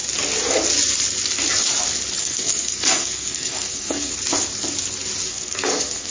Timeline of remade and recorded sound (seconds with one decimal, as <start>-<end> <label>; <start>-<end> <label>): 0.0-2.2 recorded; 2.2-4.1 remade; 4.1-5.3 recorded; 5.3-6.1 remade